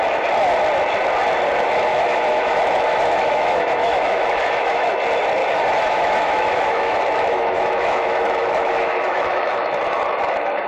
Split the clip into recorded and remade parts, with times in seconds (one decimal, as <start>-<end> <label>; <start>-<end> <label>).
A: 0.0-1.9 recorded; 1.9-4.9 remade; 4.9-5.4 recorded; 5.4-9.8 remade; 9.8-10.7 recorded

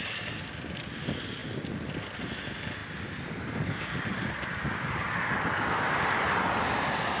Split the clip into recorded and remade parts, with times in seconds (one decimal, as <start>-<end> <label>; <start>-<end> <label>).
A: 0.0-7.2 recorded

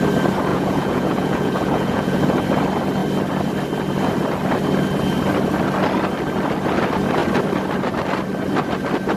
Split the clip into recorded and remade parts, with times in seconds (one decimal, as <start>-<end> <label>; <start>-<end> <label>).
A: 0.0-0.5 recorded; 0.5-2.2 remade; 2.2-9.2 recorded

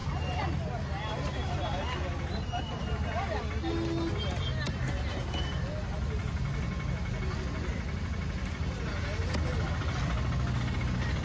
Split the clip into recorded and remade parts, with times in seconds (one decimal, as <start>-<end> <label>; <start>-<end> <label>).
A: 0.0-11.2 recorded